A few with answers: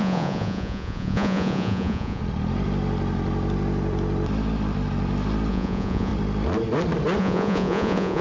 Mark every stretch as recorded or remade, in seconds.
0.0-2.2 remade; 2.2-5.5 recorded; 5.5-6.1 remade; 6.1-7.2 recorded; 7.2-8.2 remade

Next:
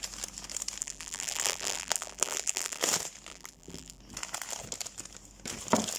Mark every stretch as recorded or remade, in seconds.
0.0-0.8 recorded; 0.8-2.8 remade; 2.8-3.3 recorded; 3.3-4.0 remade; 4.0-6.0 recorded

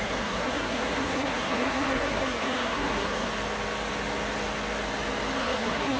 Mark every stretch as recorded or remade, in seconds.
0.0-3.3 remade; 3.3-5.4 recorded; 5.4-6.0 remade

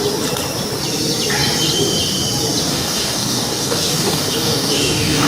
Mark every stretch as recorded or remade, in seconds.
0.0-2.7 recorded; 2.7-5.3 remade

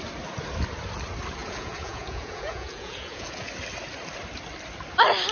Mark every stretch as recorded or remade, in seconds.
0.0-1.4 recorded; 1.4-3.5 remade; 3.5-5.3 recorded